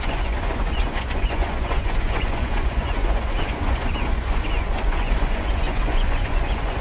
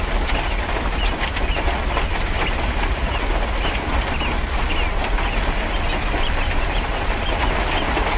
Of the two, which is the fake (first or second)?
first